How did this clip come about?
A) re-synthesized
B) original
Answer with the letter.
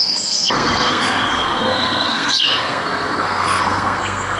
A